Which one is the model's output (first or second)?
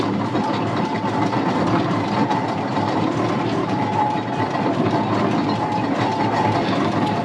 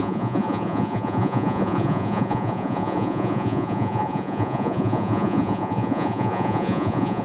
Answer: second